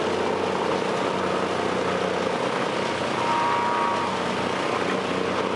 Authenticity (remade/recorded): recorded